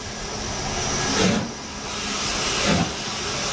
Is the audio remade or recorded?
recorded